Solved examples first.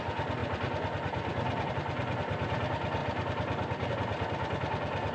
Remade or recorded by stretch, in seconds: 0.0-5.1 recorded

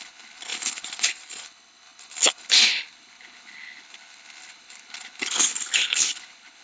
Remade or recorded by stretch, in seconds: 0.0-6.6 remade

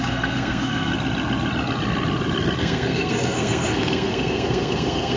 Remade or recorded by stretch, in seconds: 0.0-0.9 remade; 0.9-2.6 recorded; 2.6-5.2 remade

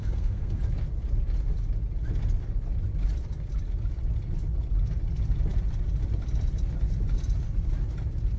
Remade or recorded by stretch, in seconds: 0.0-0.6 remade; 0.6-8.4 recorded

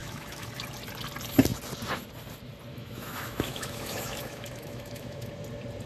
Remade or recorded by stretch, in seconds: 0.0-0.5 remade; 0.5-2.7 recorded; 2.7-5.3 remade; 5.3-5.9 recorded

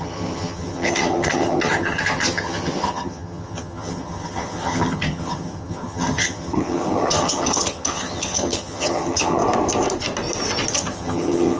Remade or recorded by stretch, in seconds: 0.0-9.4 remade; 9.4-10.7 recorded; 10.7-11.6 remade

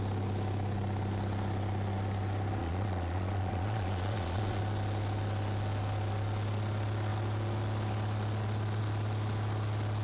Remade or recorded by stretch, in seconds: 0.0-2.6 recorded; 2.6-4.6 remade; 4.6-10.0 recorded